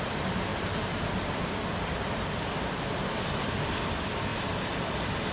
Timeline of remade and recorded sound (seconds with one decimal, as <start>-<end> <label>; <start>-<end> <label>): 0.0-0.5 recorded; 0.5-3.7 remade; 3.7-5.3 recorded